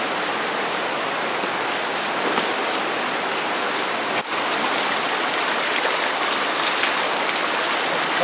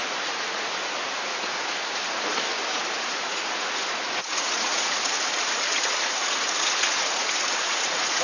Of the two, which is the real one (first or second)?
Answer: first